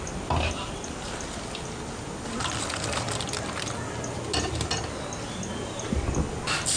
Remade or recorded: recorded